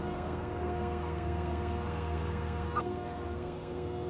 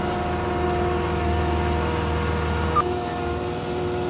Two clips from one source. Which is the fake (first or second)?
first